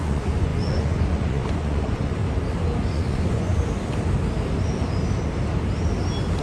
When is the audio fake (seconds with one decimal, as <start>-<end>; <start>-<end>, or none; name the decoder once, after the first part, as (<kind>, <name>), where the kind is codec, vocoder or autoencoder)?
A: 0.0-2.2 (vocoder, Vocos); 2.9-3.5